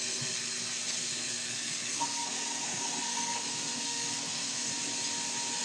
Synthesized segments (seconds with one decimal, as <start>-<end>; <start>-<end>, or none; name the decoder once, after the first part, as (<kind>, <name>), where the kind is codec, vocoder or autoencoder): 0.0-4.7 (codec, SNAC)